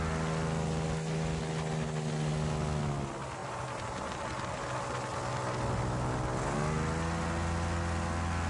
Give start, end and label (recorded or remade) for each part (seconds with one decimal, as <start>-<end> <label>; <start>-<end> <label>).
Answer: 0.0-3.4 recorded; 3.4-4.2 remade; 4.2-8.5 recorded